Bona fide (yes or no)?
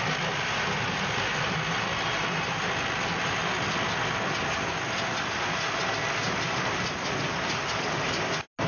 yes